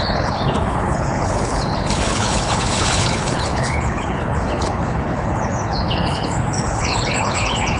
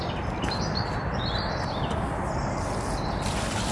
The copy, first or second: first